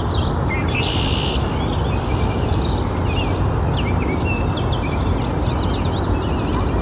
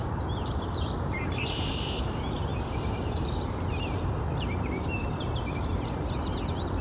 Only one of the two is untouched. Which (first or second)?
first